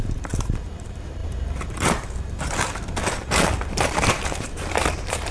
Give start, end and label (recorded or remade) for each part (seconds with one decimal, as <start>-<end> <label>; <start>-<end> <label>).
0.0-5.3 remade